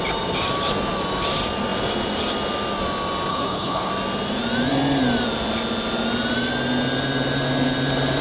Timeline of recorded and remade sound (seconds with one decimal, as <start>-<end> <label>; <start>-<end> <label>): 0.0-3.3 recorded; 3.3-3.9 remade; 3.9-8.2 recorded